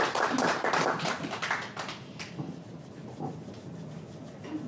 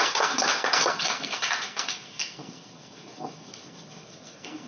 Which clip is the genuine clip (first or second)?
first